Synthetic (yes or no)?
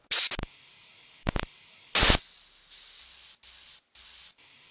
no